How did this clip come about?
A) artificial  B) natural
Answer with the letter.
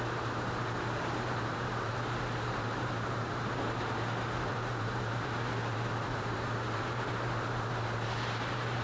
A